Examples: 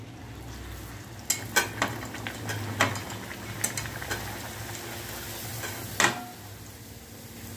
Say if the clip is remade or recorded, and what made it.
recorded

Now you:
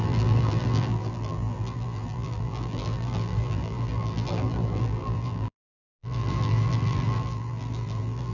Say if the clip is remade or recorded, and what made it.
remade, vocoder, BigVGAN v2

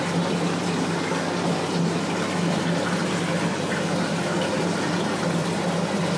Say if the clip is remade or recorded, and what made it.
recorded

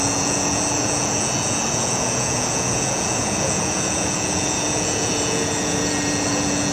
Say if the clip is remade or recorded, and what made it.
remade, vocoder, Vocos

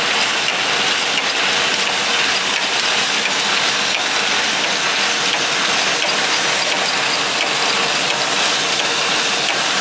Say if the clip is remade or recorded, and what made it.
recorded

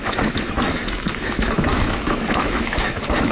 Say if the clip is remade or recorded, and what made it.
remade, autoencoder, DAC-VAE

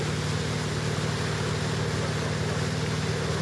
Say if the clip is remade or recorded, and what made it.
recorded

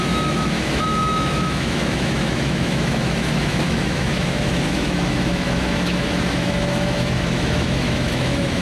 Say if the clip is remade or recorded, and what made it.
remade, autoencoder, DAC-VAE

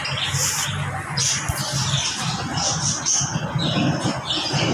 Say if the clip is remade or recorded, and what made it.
recorded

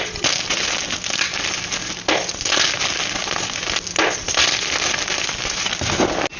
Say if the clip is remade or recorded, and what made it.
recorded